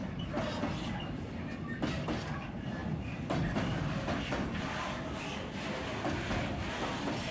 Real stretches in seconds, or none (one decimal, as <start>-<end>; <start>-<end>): 0.0-7.3